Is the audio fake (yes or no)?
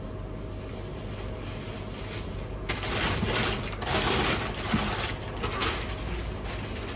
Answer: no